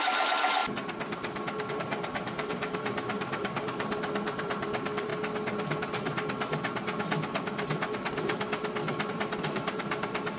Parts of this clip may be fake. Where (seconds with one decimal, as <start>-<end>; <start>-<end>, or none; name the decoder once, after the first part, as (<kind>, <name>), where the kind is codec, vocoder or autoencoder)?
0.0-0.6 (vocoder, BigVGAN v2); 1.7-5.1; 9.1-10.4

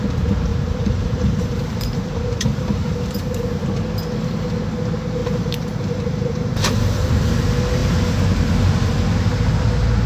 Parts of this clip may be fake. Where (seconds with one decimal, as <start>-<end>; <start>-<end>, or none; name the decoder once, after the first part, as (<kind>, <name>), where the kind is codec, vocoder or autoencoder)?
0.5-3.4 (vocoder, BigVGAN v2); 5.2-7.1

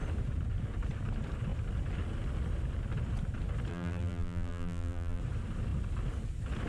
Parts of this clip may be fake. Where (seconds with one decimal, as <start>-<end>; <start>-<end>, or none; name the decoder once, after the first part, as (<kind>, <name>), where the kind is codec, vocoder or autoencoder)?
3.7-5.2 (vocoder, BigVGAN v2)

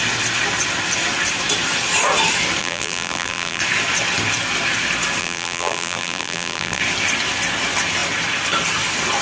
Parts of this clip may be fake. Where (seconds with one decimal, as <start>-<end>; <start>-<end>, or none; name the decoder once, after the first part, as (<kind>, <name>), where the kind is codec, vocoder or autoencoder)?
2.6-3.6 (vocoder, BigVGAN v2); 5.2-6.8

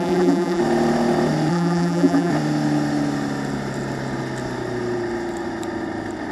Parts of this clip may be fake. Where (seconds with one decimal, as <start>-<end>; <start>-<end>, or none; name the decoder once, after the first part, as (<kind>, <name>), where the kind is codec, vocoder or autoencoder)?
0.0-0.6 (vocoder, BigVGAN v2); 1.5-2.3

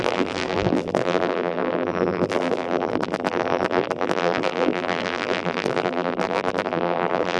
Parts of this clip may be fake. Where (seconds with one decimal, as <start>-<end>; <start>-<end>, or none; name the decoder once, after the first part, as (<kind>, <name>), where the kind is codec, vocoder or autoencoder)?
0.0-7.4 (vocoder, BigVGAN v2)